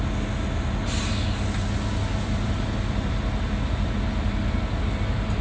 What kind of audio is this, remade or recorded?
recorded